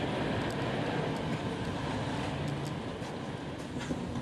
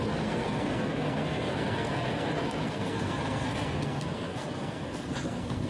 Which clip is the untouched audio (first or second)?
first